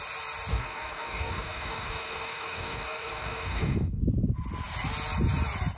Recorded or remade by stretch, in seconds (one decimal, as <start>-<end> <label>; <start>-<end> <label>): 0.0-0.5 recorded; 0.5-4.0 remade; 4.0-5.8 recorded